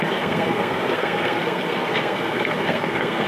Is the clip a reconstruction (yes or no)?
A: yes